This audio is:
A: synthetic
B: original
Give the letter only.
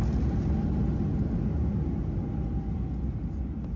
B